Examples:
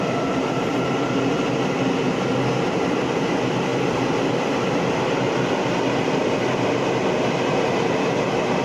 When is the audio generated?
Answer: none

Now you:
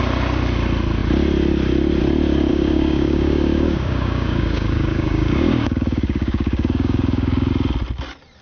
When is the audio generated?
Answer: 2.5-7.5

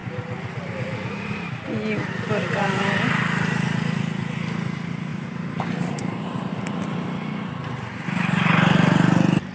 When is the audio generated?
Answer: none

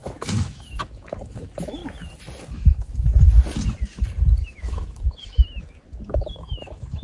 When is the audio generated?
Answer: 0.0-1.8; 2.5-3.1; 4.4-7.0